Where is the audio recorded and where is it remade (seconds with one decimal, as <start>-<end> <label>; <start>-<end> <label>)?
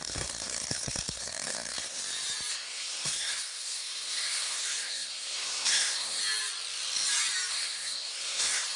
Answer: 0.0-2.0 remade; 2.0-2.5 recorded; 2.5-6.2 remade; 6.2-7.5 recorded; 7.5-8.8 remade